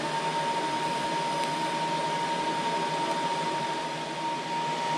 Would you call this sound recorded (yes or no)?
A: yes